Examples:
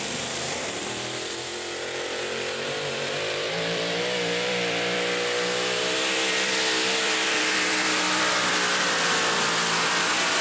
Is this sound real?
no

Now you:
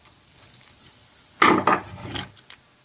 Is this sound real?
yes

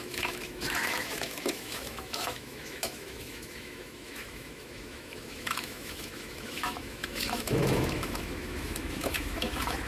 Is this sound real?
no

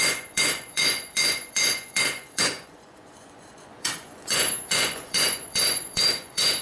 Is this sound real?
no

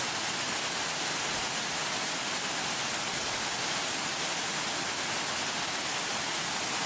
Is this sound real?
yes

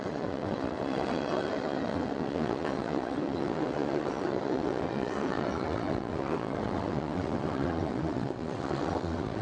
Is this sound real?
no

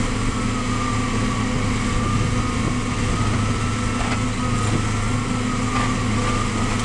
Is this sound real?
yes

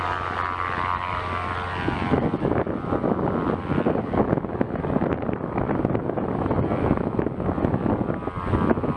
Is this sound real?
yes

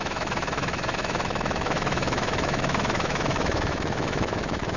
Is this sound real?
no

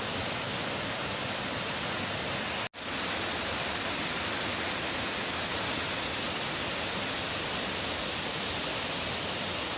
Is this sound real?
yes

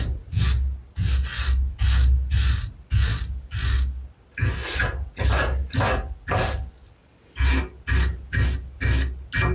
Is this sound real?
yes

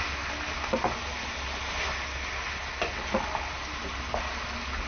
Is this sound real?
yes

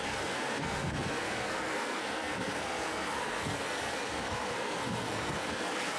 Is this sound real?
no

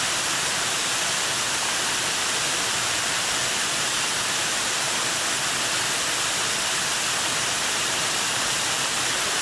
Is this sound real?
yes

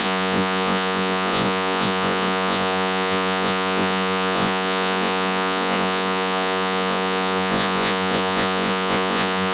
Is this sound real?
no